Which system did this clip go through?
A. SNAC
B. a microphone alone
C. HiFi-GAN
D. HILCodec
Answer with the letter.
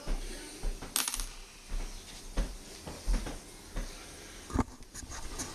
B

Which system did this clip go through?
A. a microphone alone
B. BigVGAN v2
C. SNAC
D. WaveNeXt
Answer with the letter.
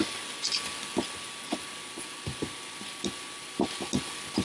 A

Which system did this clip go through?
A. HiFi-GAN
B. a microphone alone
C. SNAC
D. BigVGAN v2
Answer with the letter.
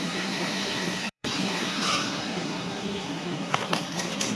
C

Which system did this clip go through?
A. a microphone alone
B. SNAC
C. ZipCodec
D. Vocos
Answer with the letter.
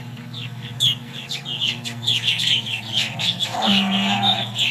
B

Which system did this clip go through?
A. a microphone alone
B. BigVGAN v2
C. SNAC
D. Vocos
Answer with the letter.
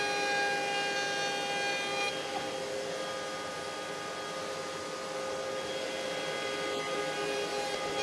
A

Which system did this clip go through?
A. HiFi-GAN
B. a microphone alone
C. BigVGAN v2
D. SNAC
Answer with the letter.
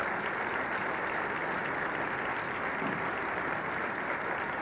B